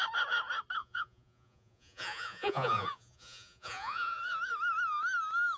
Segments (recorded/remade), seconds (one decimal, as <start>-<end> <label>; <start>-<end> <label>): 0.0-0.8 recorded; 0.8-4.2 remade; 4.2-5.6 recorded

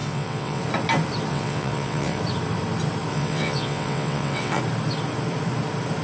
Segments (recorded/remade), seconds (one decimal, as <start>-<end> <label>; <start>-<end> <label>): 0.0-0.6 remade; 0.6-1.3 recorded; 1.3-2.2 remade; 2.2-3.1 recorded; 3.1-4.6 remade; 4.6-6.0 recorded

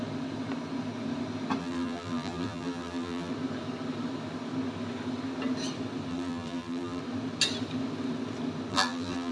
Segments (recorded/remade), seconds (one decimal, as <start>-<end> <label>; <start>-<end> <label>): 0.0-1.6 recorded; 1.6-3.3 remade; 3.3-6.1 recorded; 6.1-7.0 remade; 7.0-8.7 recorded; 8.7-9.3 remade

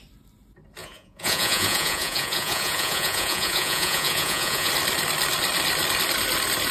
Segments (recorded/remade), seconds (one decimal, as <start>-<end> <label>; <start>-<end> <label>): 0.0-0.8 recorded; 0.8-4.7 remade; 4.7-6.7 recorded